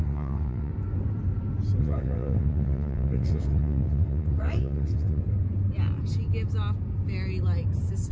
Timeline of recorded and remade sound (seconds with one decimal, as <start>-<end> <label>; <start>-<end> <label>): 0.0-0.7 remade; 0.7-1.8 recorded; 1.8-5.2 remade; 5.2-8.1 recorded